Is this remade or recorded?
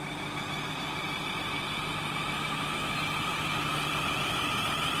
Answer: recorded